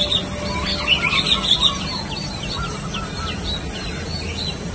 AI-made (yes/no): no